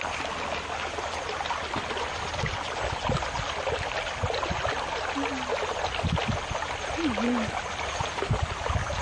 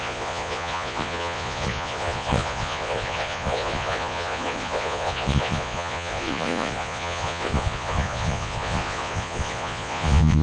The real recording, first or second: first